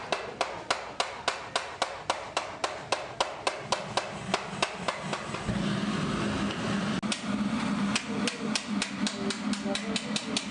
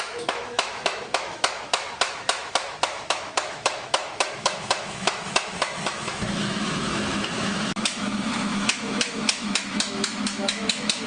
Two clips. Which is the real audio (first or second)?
first